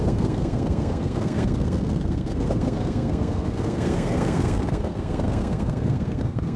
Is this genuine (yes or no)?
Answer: no